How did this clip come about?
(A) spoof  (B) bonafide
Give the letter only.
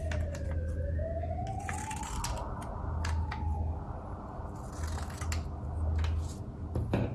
B